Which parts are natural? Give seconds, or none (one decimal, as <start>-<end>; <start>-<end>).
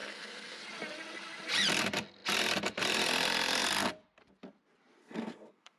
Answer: 0.6-5.0